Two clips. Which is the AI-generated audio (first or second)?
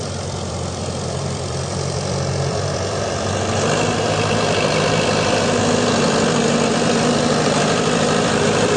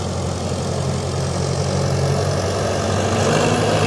first